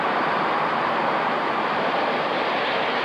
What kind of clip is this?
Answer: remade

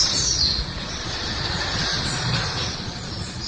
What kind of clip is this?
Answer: remade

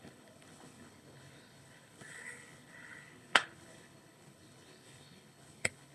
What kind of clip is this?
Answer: remade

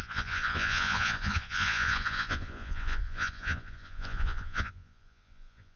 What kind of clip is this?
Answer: remade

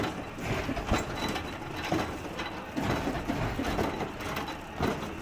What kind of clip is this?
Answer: recorded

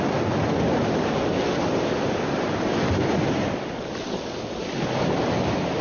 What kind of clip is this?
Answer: recorded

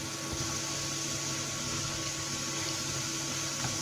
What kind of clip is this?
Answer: recorded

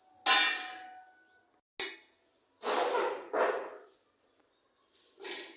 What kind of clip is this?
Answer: recorded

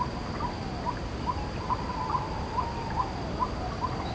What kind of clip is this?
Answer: recorded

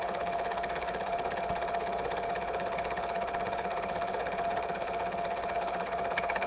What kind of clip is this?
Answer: remade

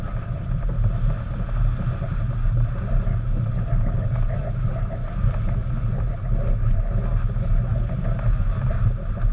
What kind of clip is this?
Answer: recorded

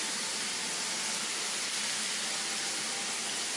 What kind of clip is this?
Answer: recorded